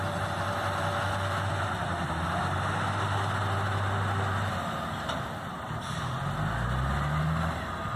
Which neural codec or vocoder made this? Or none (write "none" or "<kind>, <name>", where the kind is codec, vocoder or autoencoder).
none